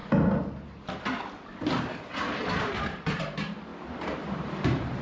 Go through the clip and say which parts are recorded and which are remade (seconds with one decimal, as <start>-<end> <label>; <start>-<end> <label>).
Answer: 0.0-2.6 recorded; 2.6-3.7 remade; 3.7-4.2 recorded; 4.2-5.0 remade

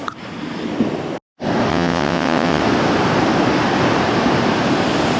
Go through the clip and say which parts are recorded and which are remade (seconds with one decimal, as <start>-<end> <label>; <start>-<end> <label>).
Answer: 0.0-1.7 recorded; 1.7-2.6 remade; 2.6-5.2 recorded

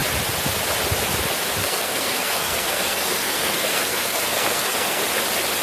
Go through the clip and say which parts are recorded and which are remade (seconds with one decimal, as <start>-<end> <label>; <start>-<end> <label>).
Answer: 0.0-1.6 recorded; 1.6-5.0 remade; 5.0-5.6 recorded

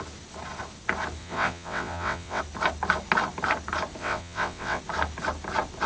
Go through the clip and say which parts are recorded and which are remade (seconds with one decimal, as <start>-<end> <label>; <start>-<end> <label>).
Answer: 0.0-1.2 recorded; 1.2-2.4 remade; 2.4-4.0 recorded; 4.0-4.8 remade; 4.8-5.9 recorded

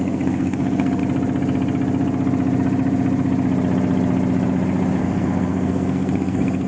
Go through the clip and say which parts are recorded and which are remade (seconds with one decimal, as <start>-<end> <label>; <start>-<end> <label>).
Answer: 0.0-1.0 remade; 1.0-5.0 recorded; 5.0-6.7 remade